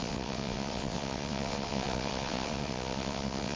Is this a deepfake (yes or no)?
yes